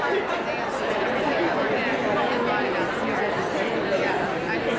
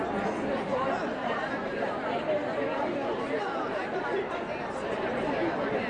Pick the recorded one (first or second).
first